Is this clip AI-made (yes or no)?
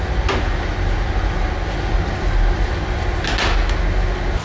no